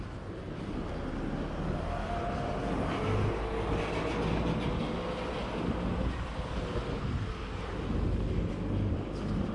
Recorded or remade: recorded